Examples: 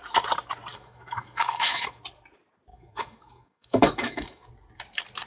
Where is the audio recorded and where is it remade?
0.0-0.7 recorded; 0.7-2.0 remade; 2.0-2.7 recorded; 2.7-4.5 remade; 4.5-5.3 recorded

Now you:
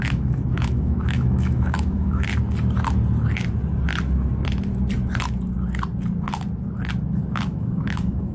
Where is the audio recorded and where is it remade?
0.0-2.3 remade; 2.3-7.2 recorded; 7.2-8.3 remade

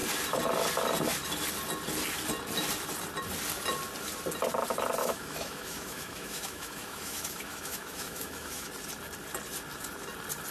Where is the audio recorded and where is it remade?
0.0-5.0 recorded; 5.0-8.7 remade; 8.7-10.5 recorded

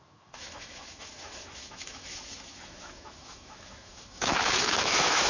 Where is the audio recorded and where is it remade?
0.0-5.3 remade

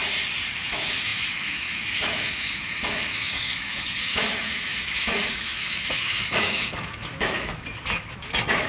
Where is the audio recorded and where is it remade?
0.0-0.5 recorded; 0.5-8.7 remade

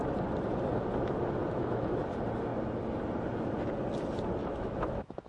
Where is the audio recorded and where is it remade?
0.0-1.4 recorded; 1.4-1.9 remade; 1.9-4.4 recorded; 4.4-5.3 remade

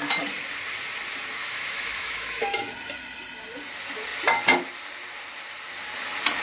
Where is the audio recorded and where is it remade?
0.0-1.3 recorded; 1.3-2.6 remade; 2.6-6.4 recorded